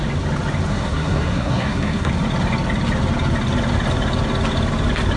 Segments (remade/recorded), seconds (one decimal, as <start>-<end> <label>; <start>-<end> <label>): 0.0-0.7 recorded; 0.7-2.1 remade; 2.1-5.2 recorded